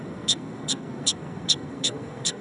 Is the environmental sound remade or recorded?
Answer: remade